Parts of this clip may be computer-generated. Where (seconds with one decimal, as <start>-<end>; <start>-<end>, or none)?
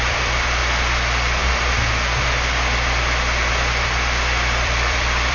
0.0-0.6; 3.5-5.3